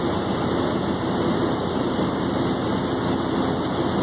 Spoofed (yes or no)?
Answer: no